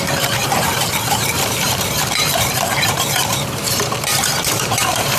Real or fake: fake